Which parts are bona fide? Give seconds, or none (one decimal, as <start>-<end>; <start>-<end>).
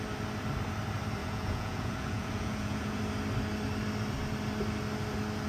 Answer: 0.0-1.2; 3.0-5.5